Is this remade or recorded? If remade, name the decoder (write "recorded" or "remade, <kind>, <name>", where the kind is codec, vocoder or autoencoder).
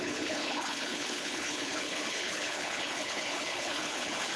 remade, codec, HILCodec